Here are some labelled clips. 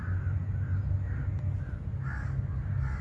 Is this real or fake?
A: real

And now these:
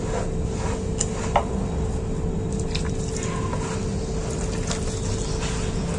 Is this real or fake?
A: real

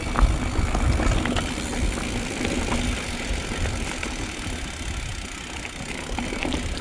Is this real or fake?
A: real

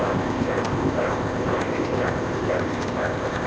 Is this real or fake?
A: fake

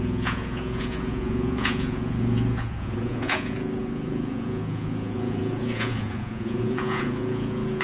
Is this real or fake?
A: fake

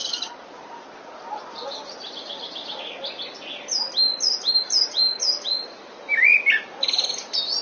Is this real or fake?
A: real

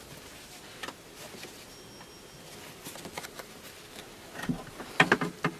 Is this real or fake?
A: real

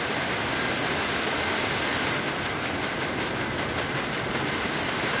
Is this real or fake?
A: real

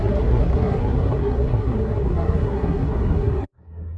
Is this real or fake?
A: fake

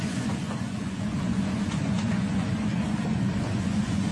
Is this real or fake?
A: fake